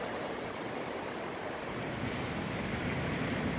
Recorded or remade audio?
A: remade